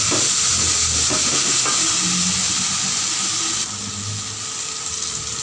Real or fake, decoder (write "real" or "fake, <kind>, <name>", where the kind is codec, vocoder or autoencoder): real